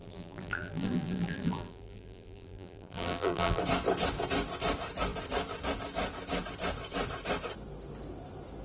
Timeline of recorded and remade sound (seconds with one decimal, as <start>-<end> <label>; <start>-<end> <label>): 0.0-3.6 remade; 3.6-8.6 recorded